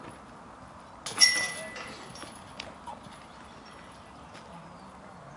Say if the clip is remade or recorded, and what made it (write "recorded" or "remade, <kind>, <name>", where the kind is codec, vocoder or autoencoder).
recorded